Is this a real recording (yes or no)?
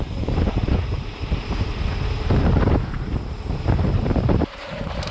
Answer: no